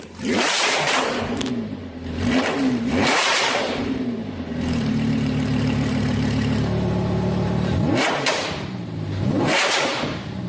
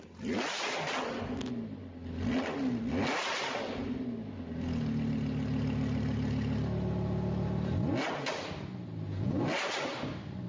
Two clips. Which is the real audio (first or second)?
second